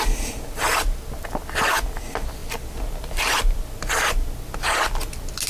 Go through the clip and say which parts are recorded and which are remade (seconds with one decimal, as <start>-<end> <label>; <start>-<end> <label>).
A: 0.0-5.5 recorded